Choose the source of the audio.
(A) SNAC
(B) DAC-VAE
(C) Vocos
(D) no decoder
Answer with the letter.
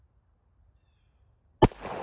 D